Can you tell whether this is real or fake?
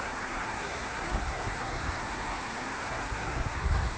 fake